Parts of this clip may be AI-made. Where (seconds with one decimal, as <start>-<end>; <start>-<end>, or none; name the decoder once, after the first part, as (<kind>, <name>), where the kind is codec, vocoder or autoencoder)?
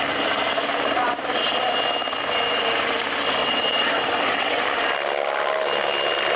3.4-4.6 (vocoder, WaveNeXt)